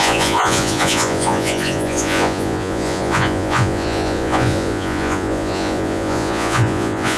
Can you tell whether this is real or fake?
fake